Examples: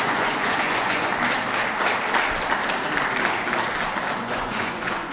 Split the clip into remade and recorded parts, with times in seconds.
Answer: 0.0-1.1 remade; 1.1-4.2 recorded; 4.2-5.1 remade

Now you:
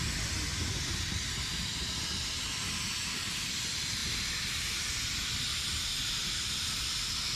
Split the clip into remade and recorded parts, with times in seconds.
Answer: 0.0-7.4 recorded